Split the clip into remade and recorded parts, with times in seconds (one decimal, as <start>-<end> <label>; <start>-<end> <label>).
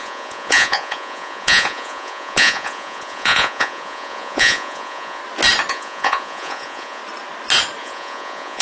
0.0-5.2 remade; 5.2-5.7 recorded; 5.7-7.0 remade; 7.0-7.8 recorded; 7.8-8.6 remade